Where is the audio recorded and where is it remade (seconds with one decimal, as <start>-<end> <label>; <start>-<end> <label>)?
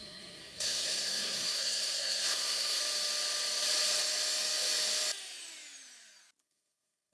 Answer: 0.0-2.8 remade; 2.8-6.4 recorded; 6.4-7.1 remade